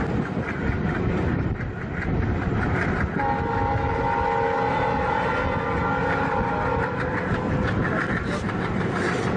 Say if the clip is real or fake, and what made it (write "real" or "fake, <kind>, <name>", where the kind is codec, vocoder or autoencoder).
real